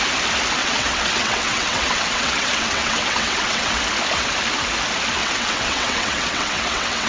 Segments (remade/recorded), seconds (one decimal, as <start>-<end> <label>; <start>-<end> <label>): 0.0-0.6 recorded; 0.6-3.8 remade; 3.8-5.2 recorded; 5.2-7.1 remade